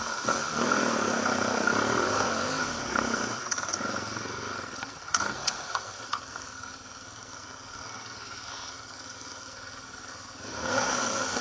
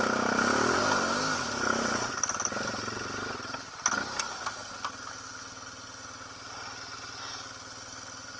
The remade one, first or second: first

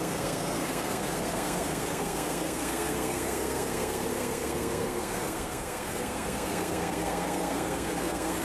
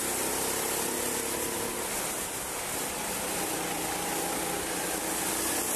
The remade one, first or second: first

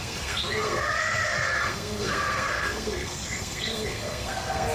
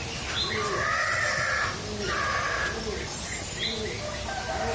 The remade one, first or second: first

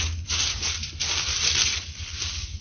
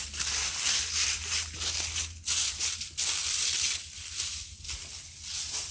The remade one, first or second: first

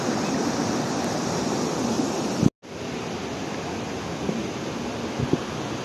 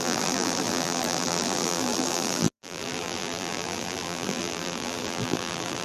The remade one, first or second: second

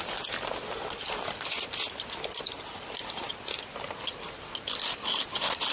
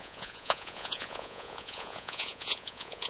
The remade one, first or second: second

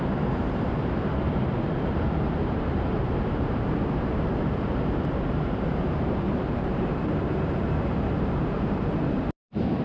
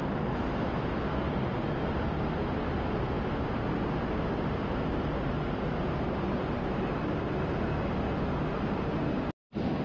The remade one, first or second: first